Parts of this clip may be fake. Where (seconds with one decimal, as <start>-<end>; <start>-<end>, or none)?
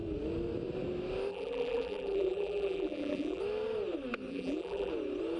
1.3-3.4; 4.3-4.9